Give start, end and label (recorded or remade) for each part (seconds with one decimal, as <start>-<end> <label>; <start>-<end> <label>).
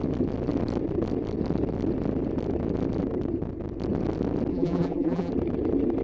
0.0-4.5 recorded; 4.5-5.3 remade; 5.3-6.0 recorded